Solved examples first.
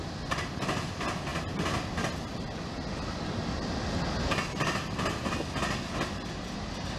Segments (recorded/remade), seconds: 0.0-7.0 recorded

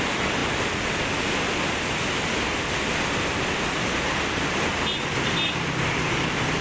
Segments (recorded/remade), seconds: 0.0-6.6 recorded

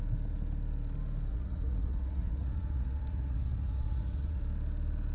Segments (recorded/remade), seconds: 0.0-1.3 recorded; 1.3-4.4 remade; 4.4-5.1 recorded

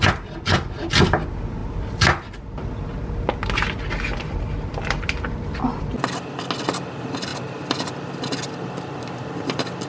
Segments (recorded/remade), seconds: 0.0-1.6 recorded; 1.6-2.7 remade; 2.7-7.3 recorded; 7.3-9.3 remade; 9.3-9.9 recorded

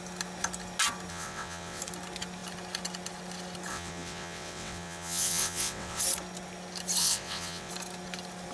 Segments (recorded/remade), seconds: 0.0-1.1 recorded; 1.1-1.8 remade; 1.8-3.7 recorded; 3.7-6.0 remade; 6.0-7.0 recorded; 7.0-7.7 remade; 7.7-8.5 recorded

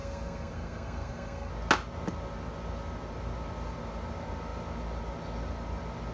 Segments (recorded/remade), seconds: 0.0-1.5 remade; 1.5-6.1 recorded

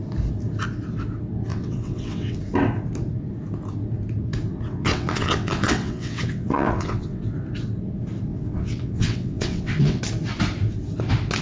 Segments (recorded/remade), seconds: 0.0-1.5 recorded; 1.5-2.4 remade; 2.4-4.7 recorded; 4.7-7.2 remade; 7.2-8.3 recorded; 8.3-10.0 remade; 10.0-11.4 recorded

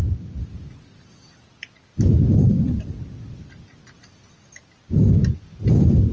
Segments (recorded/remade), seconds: 0.0-6.1 recorded